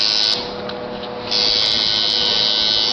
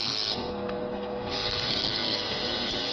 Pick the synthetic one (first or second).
second